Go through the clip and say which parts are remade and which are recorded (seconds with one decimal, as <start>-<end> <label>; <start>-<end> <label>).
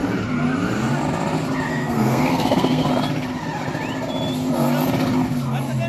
0.0-1.7 recorded; 1.7-2.9 remade; 2.9-5.9 recorded